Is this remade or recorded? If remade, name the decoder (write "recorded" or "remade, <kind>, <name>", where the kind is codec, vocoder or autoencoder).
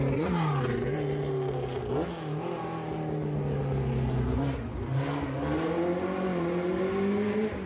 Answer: recorded